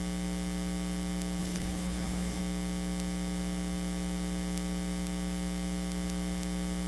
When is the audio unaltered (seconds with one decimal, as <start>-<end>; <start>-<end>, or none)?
0.0-1.4; 2.4-6.9